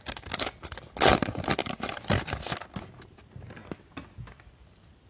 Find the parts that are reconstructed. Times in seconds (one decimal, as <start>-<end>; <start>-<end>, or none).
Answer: 1.6-2.3